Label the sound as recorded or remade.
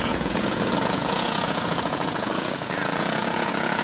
remade